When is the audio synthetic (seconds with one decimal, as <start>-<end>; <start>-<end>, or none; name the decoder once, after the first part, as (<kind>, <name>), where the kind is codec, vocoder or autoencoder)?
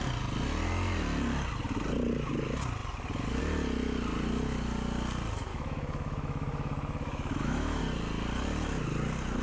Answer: 5.5-7.8 (autoencoder, DAC-VAE)